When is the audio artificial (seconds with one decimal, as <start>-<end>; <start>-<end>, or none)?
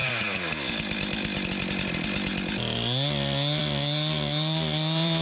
0.0-2.3; 3.6-5.2